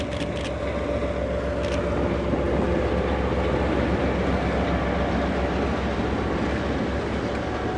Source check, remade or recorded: recorded